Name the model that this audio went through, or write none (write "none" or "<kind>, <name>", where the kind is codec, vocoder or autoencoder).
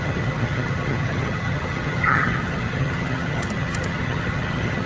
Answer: vocoder, HiFi-GAN